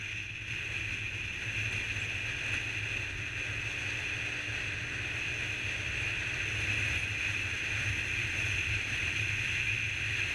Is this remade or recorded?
recorded